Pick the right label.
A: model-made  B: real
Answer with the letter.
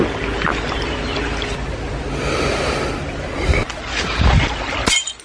B